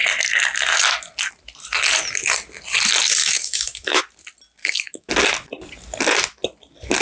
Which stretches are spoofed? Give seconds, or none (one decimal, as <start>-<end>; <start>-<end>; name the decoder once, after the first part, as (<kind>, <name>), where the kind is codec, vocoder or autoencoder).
3.2-4.0 (autoencoder, DAC-VAE); 4.6-5.1